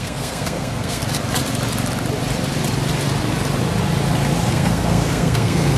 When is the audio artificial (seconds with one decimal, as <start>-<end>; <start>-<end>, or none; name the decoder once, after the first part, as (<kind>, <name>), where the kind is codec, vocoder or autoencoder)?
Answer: 0.0-1.0 (codec, SNAC); 4.5-5.8